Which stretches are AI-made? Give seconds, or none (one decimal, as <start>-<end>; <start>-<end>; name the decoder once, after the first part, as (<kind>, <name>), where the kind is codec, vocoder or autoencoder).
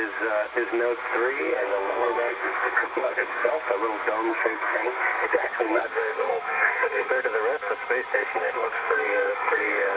1.6-3.5 (codec, SNAC); 4.3-7.1; 8.1-10.0